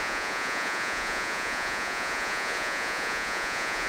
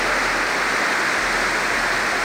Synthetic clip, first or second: first